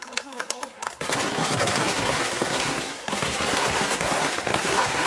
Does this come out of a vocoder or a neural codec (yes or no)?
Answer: yes